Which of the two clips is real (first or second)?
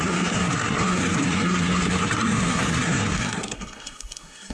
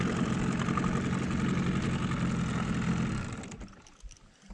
second